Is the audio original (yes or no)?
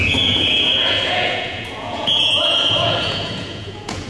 no